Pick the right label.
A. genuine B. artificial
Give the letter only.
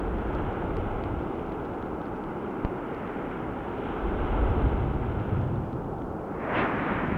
A